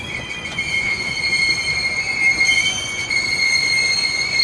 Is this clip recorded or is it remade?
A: remade